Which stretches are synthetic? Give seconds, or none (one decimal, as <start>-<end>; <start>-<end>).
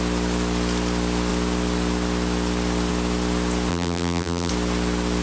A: 3.7-4.5